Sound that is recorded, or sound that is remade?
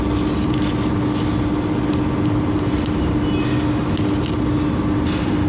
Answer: recorded